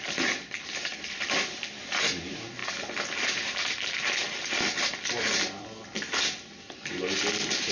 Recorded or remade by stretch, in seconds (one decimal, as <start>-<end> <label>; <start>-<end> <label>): 0.0-0.9 recorded; 0.9-1.6 remade; 1.6-4.2 recorded; 4.2-4.7 remade; 4.7-7.7 recorded